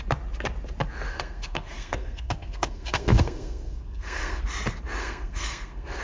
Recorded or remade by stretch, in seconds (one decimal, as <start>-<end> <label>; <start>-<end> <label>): 0.0-1.1 recorded; 1.1-4.4 remade; 4.4-5.0 recorded; 5.0-6.0 remade